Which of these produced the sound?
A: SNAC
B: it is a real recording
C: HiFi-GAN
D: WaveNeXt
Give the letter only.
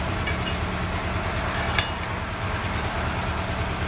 B